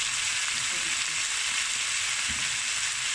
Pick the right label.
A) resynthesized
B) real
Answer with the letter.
B